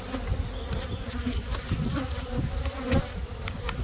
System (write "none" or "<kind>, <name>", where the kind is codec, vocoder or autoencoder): none